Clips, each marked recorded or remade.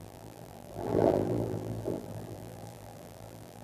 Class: remade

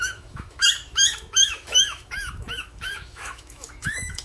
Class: remade